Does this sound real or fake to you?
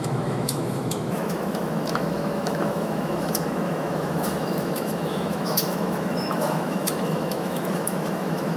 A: fake